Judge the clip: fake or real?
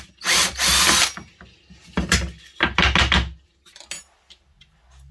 real